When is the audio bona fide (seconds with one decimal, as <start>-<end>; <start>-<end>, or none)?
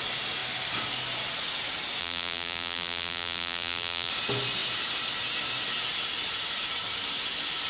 0.0-2.0; 4.1-7.7